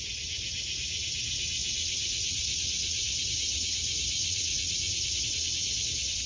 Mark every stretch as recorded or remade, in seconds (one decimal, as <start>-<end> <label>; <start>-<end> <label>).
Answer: 0.0-1.6 recorded; 1.6-3.2 remade; 3.2-4.2 recorded; 4.2-5.2 remade; 5.2-6.3 recorded